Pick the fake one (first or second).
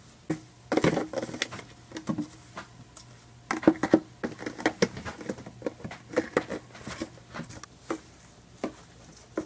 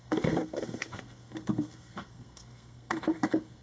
second